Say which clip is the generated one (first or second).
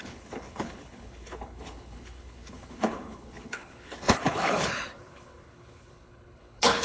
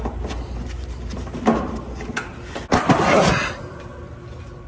first